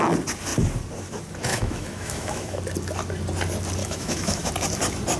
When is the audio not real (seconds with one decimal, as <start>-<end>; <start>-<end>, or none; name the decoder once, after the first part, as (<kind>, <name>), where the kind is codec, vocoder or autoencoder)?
1.5-2.6 (autoencoder, DAC-VAE); 3.8-4.5